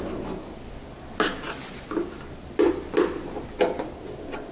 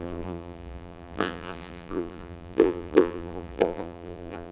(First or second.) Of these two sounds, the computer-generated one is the second